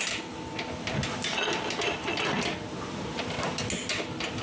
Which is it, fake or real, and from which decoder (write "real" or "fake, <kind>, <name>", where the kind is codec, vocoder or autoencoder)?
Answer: real